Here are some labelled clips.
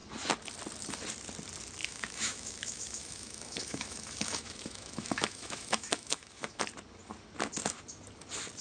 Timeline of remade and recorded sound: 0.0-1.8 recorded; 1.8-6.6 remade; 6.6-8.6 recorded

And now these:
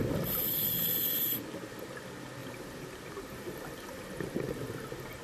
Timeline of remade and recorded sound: 0.0-2.4 recorded; 2.4-4.0 remade; 4.0-5.2 recorded

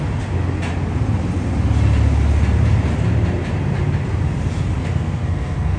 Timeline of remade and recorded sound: 0.0-4.8 recorded; 4.8-5.8 remade

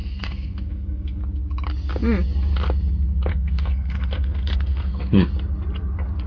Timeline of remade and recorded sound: 0.0-1.2 remade; 1.2-3.3 recorded; 3.3-5.3 remade; 5.3-6.3 recorded

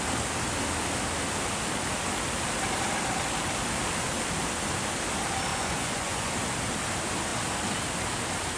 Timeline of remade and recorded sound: 0.0-5.5 recorded; 5.5-6.3 remade; 6.3-8.6 recorded

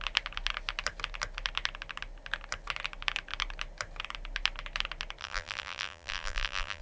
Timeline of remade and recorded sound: 0.0-5.2 recorded; 5.2-6.8 remade

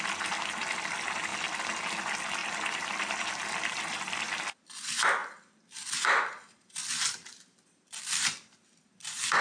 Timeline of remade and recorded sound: 0.0-2.4 recorded; 2.4-4.3 remade; 4.3-5.2 recorded; 5.2-7.3 remade; 7.3-9.4 recorded